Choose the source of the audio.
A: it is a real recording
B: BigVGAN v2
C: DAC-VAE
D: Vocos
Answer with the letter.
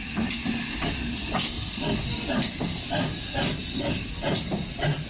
A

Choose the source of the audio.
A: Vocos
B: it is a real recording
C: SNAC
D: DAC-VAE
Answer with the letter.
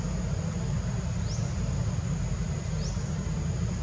B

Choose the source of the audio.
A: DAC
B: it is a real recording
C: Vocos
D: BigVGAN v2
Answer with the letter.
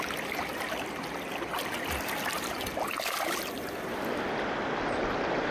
B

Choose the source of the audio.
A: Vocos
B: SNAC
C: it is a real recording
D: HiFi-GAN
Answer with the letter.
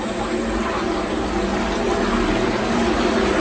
C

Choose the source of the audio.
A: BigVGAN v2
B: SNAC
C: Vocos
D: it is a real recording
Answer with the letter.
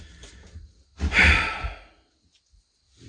D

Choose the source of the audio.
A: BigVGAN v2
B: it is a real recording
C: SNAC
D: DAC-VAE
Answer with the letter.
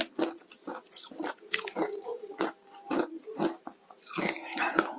B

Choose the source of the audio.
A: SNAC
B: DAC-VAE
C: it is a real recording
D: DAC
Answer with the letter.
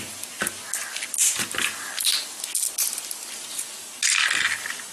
C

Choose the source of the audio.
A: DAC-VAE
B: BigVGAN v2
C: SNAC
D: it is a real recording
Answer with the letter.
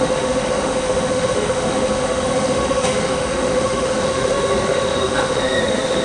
A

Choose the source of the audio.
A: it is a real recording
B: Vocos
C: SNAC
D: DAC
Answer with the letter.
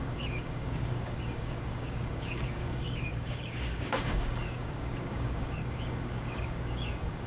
D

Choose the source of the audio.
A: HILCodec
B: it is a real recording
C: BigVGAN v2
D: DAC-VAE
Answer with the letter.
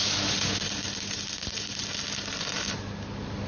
C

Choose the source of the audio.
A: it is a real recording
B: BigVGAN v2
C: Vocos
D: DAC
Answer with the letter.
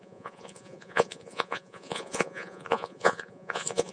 C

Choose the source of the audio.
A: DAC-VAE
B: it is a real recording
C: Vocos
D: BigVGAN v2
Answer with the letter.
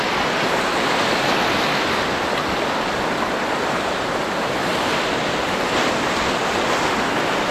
B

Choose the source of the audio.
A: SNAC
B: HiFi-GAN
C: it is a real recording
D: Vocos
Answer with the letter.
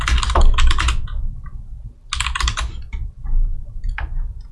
C